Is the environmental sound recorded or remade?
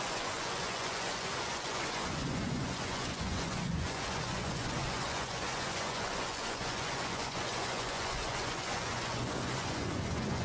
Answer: remade